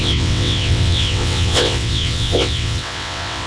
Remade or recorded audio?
remade